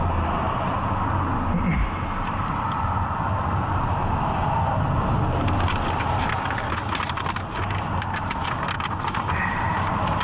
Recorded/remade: recorded